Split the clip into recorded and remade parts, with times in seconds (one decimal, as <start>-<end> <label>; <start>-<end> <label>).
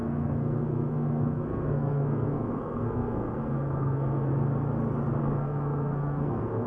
0.0-4.3 remade; 4.3-5.2 recorded; 5.2-6.7 remade